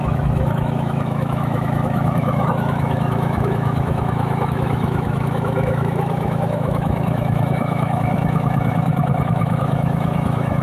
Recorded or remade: remade